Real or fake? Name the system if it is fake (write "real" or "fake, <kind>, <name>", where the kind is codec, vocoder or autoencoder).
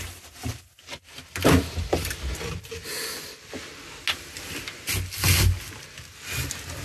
real